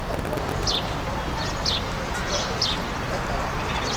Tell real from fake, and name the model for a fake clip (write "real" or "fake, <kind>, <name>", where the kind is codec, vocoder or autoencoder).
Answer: real